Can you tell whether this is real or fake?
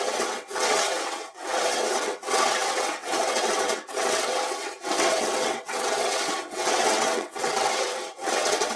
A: fake